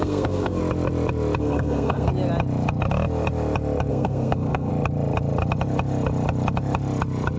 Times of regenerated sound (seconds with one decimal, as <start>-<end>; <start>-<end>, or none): 0.0-0.6; 1.4-2.1; 3.9-4.7